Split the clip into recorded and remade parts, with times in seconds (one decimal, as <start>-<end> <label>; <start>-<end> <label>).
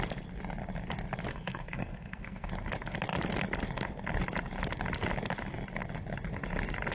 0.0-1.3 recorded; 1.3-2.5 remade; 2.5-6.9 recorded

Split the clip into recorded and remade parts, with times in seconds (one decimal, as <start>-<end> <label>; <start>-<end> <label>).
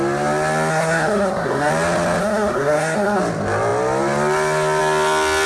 0.0-0.7 recorded; 0.7-1.7 remade; 1.7-2.2 recorded; 2.2-3.2 remade; 3.2-5.5 recorded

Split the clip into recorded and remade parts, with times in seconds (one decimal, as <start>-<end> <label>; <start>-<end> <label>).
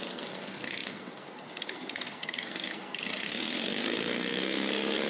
0.0-5.1 remade